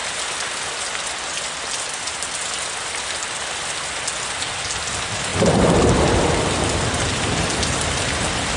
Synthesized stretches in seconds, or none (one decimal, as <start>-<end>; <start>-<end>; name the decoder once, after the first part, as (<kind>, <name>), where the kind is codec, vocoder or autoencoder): none